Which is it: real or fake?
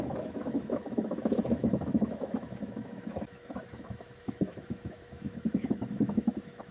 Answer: fake